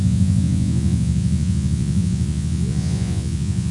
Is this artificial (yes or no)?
yes